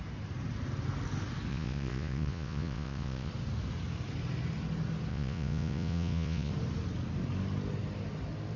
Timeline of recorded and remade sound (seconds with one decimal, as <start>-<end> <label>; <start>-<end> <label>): 0.0-1.5 recorded; 1.5-3.3 remade; 3.3-5.1 recorded; 5.1-6.5 remade; 6.5-8.6 recorded